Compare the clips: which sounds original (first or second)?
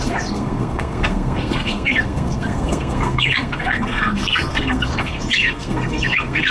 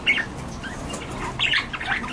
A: second